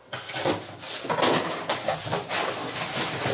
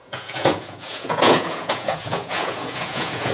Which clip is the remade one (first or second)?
second